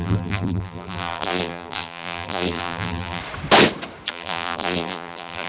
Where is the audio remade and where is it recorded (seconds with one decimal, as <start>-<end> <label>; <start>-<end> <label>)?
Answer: 0.0-3.2 remade; 3.2-4.1 recorded; 4.1-5.5 remade